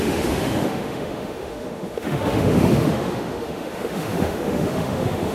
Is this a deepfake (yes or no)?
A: yes